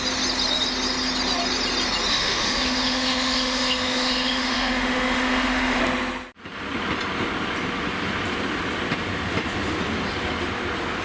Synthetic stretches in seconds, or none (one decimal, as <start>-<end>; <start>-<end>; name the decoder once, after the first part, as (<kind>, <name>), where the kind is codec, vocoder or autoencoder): 2.1-5.8 (autoencoder, DAC-VAE)